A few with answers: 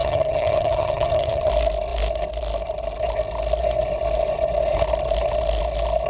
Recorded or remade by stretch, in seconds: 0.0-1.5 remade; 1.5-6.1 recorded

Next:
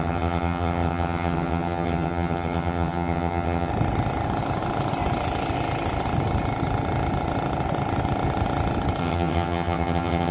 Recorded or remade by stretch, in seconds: 0.0-3.7 remade; 3.7-9.0 recorded; 9.0-10.3 remade

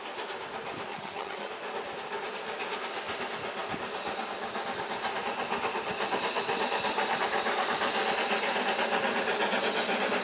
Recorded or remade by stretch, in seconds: 0.0-0.9 recorded; 0.9-1.5 remade; 1.5-10.2 recorded